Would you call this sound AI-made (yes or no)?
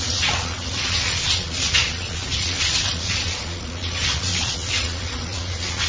yes